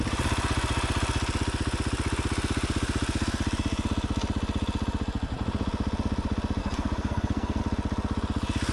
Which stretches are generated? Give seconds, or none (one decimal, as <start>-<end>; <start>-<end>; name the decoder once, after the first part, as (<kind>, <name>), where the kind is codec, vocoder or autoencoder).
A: 6.6-7.6 (codec, SNAC)